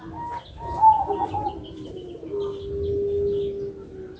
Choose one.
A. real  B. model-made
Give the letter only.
A